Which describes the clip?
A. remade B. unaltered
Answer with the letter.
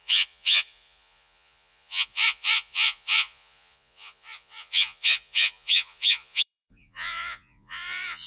A